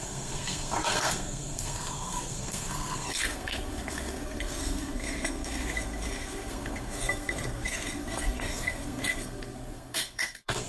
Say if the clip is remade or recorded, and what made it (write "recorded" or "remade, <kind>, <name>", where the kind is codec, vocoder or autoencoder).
remade, codec, SNAC